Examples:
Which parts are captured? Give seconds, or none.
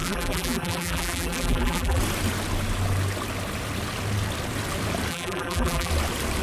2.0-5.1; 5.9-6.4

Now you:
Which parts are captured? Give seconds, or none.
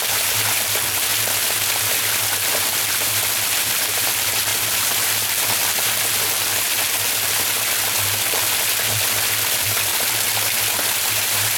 1.1-2.6; 4.5-9.4; 9.9-11.2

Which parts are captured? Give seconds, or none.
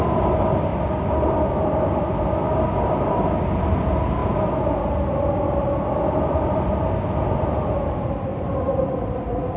0.0-8.3; 9.0-9.6